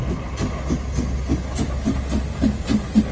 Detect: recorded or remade recorded